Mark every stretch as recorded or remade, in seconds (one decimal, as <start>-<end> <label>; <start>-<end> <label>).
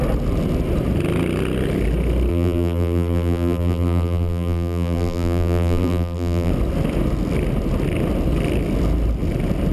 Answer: 0.0-2.3 recorded; 2.3-6.5 remade; 6.5-9.7 recorded